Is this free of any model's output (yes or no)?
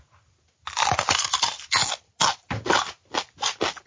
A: yes